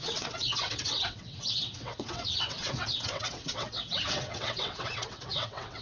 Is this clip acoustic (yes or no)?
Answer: no